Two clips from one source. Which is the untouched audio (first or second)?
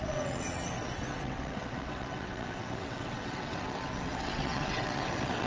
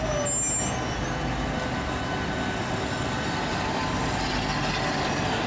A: second